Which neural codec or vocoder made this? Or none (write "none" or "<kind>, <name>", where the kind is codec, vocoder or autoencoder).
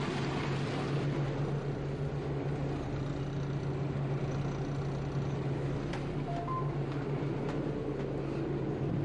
none